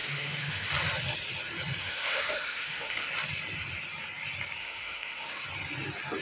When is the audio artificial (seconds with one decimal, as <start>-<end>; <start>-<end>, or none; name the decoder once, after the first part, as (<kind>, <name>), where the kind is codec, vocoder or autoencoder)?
0.0-0.7 (autoencoder, DAC-VAE); 1.8-3.1; 4.6-5.4